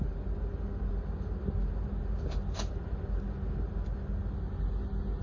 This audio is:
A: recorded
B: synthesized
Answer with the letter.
A